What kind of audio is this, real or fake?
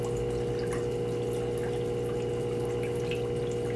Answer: real